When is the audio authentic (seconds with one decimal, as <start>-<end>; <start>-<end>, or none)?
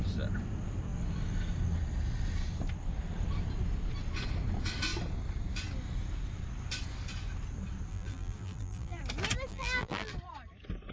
0.0-7.9; 9.0-9.5; 10.1-10.9